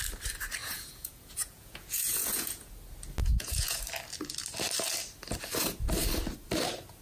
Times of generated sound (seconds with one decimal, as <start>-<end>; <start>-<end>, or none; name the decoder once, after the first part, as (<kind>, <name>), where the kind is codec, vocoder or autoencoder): 0.6-2.7 (vocoder, Vocos); 3.2-3.8